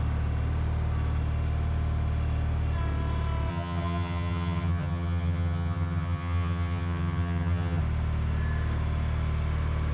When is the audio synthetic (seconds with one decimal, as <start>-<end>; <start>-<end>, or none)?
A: 3.5-7.8